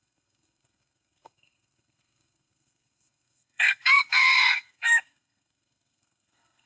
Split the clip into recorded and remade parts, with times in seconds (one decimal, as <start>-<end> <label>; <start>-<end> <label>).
0.0-6.7 remade